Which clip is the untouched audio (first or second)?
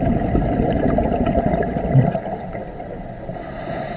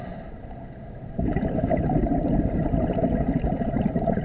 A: first